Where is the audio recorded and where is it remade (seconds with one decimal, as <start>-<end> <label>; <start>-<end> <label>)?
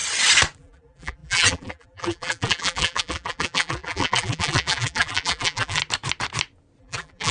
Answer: 0.0-0.6 recorded; 0.6-5.8 remade; 5.8-6.8 recorded; 6.8-7.3 remade